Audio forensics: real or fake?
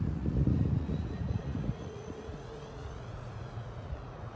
fake